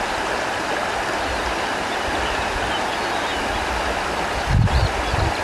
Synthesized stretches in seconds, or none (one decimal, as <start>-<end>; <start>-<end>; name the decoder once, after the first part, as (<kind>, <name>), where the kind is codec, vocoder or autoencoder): none